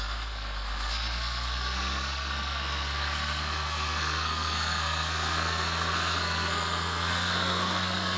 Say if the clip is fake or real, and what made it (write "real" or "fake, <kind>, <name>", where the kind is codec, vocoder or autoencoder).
fake, codec, SNAC